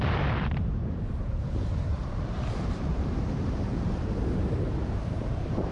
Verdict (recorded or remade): remade